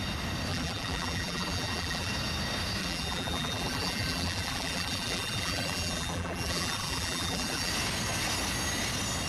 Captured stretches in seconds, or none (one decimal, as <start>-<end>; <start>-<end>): 0.0-0.5; 2.1-2.8; 7.7-9.3